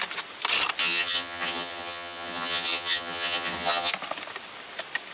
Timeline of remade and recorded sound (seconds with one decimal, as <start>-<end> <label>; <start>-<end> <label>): 0.0-0.8 recorded; 0.8-3.9 remade; 3.9-5.1 recorded